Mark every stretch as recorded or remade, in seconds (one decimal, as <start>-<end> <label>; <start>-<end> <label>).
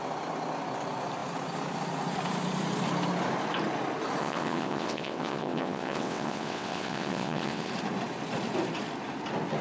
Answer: 0.0-4.2 recorded; 4.2-7.7 remade; 7.7-9.6 recorded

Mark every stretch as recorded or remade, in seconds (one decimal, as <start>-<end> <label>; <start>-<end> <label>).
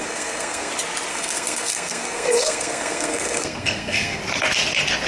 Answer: 0.0-0.7 remade; 0.7-1.1 recorded; 1.1-4.2 remade; 4.2-5.1 recorded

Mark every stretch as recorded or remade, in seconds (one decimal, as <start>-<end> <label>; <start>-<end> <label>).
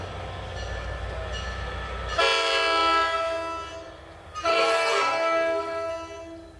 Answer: 0.0-4.5 recorded; 4.5-5.9 remade; 5.9-6.6 recorded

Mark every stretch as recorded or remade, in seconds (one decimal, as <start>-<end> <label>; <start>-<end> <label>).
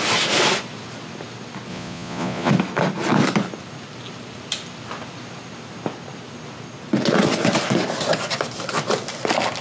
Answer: 0.0-1.7 recorded; 1.7-2.5 remade; 2.5-9.6 recorded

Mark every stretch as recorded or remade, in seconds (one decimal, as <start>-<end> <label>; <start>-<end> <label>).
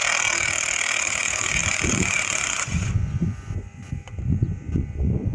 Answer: 0.0-1.0 recorded; 1.0-5.3 remade